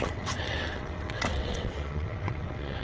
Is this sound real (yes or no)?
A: no